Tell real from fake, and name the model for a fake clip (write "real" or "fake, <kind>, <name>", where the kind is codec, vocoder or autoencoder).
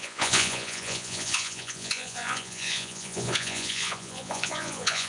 fake, vocoder, Vocos